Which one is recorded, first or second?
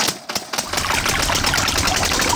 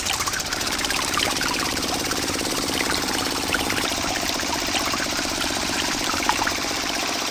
first